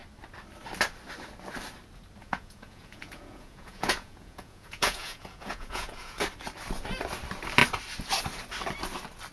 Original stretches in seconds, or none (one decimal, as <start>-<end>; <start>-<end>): 0.0-2.2; 6.2-9.3